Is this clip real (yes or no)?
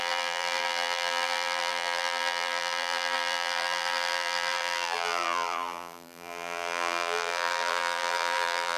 no